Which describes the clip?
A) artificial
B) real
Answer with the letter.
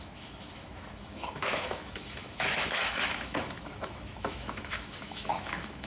A